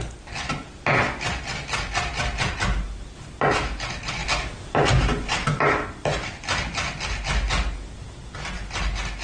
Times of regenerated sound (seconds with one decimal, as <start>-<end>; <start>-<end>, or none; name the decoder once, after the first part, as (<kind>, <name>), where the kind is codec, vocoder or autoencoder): none